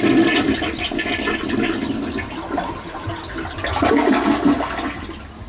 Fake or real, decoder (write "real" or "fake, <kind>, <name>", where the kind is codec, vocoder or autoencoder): real